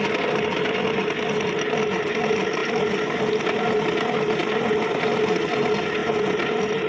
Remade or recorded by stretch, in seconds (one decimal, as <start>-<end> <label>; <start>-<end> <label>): 0.0-6.9 recorded